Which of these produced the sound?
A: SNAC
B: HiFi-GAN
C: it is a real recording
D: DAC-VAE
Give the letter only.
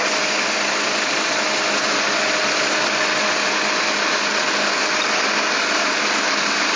C